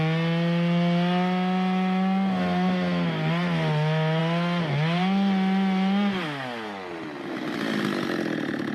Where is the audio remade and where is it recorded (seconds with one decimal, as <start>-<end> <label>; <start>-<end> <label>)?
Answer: 0.0-8.7 recorded